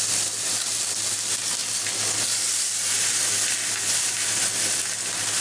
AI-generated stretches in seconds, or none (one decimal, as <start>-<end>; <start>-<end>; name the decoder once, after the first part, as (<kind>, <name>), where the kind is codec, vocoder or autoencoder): none